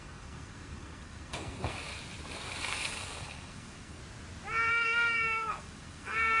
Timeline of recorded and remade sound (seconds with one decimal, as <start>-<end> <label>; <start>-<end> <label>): 0.0-1.9 remade; 1.9-2.6 recorded; 2.6-4.0 remade; 4.0-4.7 recorded; 4.7-6.4 remade